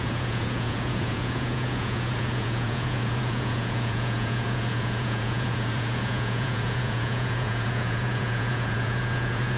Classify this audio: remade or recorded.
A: remade